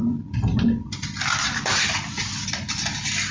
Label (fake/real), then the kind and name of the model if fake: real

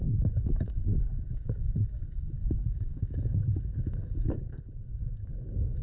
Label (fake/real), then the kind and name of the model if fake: fake, codec, DAC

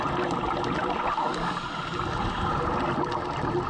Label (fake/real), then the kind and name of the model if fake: real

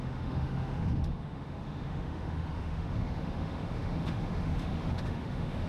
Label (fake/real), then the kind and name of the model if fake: fake, autoencoder, DAC-VAE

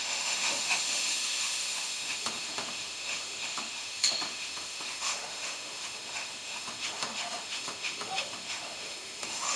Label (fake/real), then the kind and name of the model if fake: fake, autoencoder, DAC-VAE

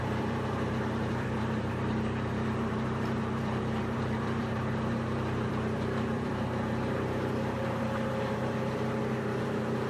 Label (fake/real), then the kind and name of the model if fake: fake, vocoder, BigVGAN v2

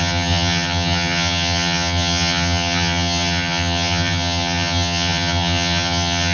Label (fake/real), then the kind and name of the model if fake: fake, vocoder, HiFi-GAN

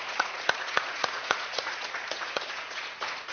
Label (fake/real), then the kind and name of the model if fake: fake, vocoder, Vocos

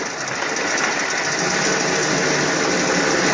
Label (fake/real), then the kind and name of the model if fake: real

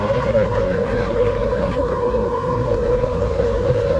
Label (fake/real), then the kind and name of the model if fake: fake, codec, SNAC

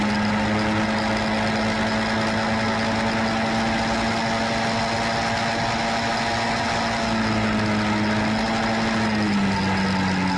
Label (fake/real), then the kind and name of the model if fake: real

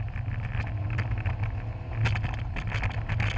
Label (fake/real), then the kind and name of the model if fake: real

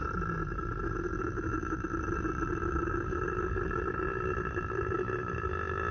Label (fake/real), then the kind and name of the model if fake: real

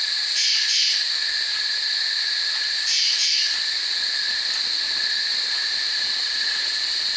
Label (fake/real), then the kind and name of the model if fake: real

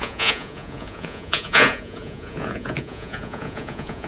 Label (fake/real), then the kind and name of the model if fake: fake, vocoder, Vocos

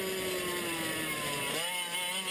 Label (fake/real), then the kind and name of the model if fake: real